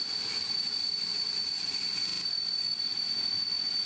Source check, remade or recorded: recorded